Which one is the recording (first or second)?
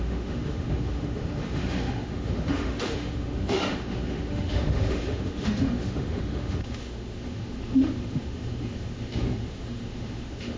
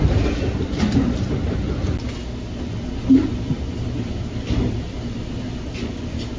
second